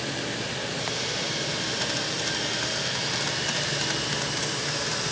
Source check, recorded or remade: recorded